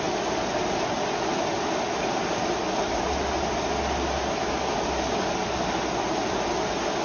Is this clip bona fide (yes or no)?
yes